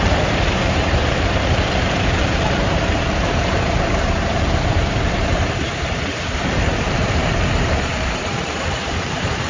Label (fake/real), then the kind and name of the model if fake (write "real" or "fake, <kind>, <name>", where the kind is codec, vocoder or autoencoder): fake, vocoder, BigVGAN v2